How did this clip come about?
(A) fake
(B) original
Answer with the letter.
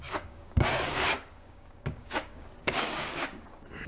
A